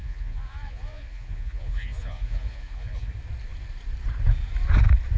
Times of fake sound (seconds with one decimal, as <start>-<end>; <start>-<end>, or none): 0.0-3.1